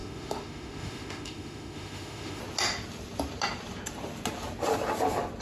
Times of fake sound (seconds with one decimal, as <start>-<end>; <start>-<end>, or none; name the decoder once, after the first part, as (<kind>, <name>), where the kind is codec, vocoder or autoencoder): 0.0-2.4 (autoencoder, DAC-VAE)